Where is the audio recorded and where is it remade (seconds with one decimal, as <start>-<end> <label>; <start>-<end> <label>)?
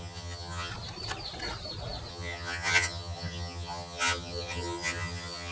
0.0-0.7 remade; 0.7-2.1 recorded; 2.1-5.5 remade